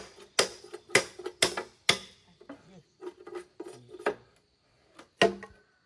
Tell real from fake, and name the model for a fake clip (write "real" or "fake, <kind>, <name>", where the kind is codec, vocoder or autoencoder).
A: real